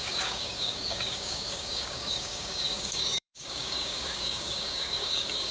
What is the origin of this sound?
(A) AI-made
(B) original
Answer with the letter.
A